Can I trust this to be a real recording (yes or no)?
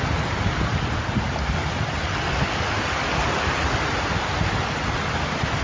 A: yes